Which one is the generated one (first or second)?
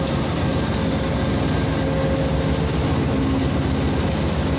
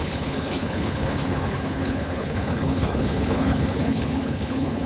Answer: second